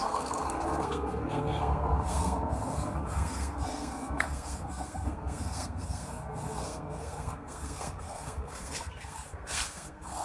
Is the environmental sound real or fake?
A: fake